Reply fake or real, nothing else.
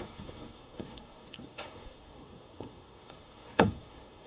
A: fake